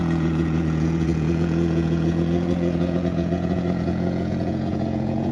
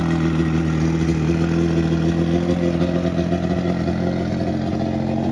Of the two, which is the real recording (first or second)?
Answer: second